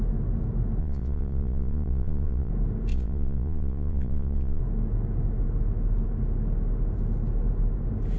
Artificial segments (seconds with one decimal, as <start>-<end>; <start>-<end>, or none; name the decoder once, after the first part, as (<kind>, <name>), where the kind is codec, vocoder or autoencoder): 0.8-2.5 (vocoder, Vocos); 2.9-4.6